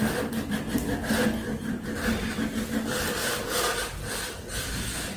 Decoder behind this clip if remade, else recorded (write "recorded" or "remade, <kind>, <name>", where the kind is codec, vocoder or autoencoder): recorded